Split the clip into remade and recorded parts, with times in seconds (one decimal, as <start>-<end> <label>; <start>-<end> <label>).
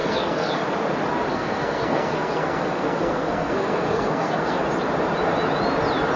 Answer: 0.0-0.6 remade; 0.6-1.3 recorded; 1.3-4.6 remade; 4.6-6.2 recorded